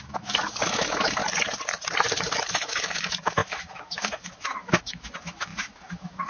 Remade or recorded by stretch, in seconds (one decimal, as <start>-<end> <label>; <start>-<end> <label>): 0.0-1.2 remade; 1.2-2.5 recorded; 2.5-6.3 remade